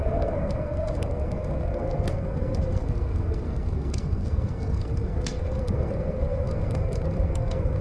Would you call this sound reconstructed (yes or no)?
yes